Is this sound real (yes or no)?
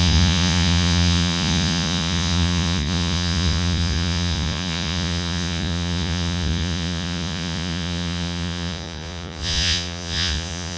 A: no